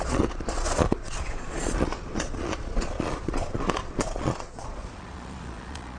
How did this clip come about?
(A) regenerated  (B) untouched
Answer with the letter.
A